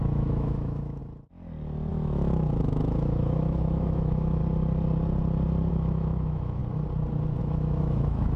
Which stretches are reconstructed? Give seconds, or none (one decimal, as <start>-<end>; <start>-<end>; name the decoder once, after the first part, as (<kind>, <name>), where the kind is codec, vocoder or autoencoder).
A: 0.0-1.0 (autoencoder, DAC-VAE); 1.9-4.4; 5.7-6.6; 7.4-8.4